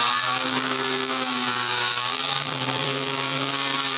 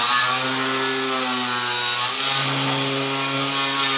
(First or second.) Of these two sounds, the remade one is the first